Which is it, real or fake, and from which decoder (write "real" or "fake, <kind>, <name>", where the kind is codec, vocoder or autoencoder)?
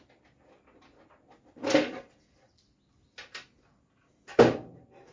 real